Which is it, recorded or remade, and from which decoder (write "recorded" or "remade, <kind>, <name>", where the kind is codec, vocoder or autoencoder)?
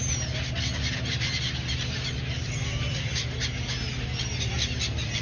recorded